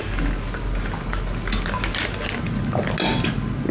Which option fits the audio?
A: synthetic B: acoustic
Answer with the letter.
B